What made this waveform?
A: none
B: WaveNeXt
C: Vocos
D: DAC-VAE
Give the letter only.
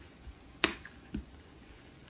C